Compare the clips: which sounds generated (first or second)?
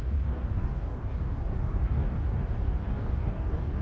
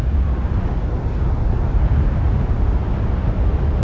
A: first